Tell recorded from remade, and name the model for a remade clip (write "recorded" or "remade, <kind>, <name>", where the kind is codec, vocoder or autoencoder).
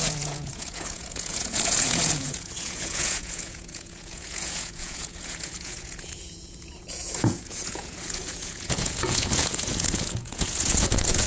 remade, vocoder, Vocos